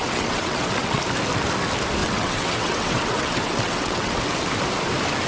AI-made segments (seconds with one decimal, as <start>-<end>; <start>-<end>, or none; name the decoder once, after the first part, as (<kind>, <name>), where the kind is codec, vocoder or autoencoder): 0.0-1.0 (vocoder, WaveNeXt); 2.0-4.2